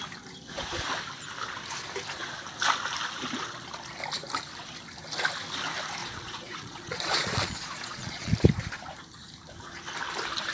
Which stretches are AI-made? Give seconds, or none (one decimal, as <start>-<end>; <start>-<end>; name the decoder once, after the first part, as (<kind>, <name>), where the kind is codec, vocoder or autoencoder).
6.0-8.3 (vocoder, Vocos)